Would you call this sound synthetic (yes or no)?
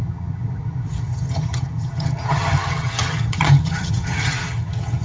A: yes